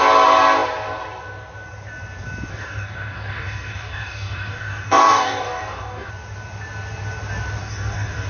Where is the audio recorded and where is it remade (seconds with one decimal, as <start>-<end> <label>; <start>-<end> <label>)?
0.0-2.5 recorded; 2.5-6.1 remade; 6.1-7.6 recorded; 7.6-8.3 remade